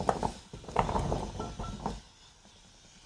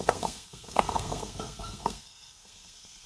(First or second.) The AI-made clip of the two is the second